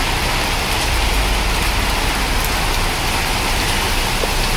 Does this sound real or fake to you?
real